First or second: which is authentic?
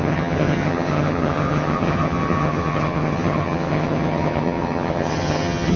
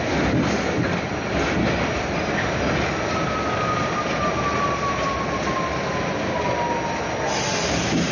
second